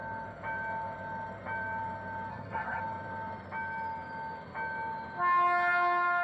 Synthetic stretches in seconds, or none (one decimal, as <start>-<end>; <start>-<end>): 2.3-2.8